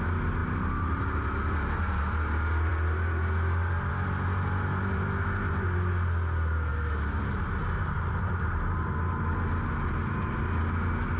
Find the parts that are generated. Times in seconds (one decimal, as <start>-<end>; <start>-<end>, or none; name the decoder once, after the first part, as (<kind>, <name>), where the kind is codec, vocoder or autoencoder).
none